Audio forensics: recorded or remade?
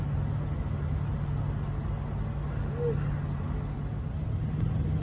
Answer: recorded